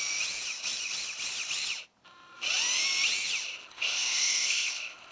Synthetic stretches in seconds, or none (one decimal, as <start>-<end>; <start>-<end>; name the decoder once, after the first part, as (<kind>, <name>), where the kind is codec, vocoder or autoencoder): 3.7-5.1 (codec, ZipCodec)